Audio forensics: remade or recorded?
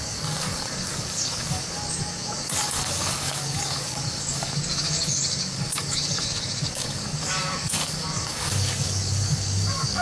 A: remade